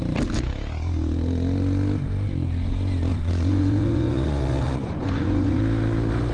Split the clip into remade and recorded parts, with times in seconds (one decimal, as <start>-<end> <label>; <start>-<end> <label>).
0.0-3.1 recorded; 3.1-5.6 remade; 5.6-6.3 recorded